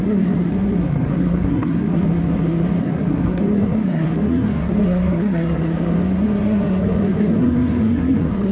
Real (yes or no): no